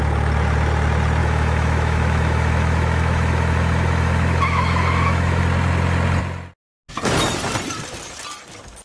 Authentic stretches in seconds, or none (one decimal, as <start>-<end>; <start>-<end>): 0.0-1.2; 5.4-8.8